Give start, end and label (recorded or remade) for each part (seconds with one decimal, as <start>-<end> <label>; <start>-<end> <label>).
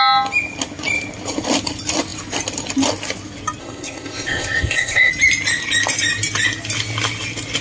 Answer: 0.0-3.6 recorded; 3.6-5.1 remade; 5.1-7.6 recorded